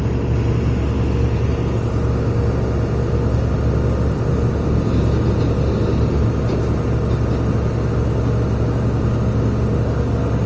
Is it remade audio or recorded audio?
recorded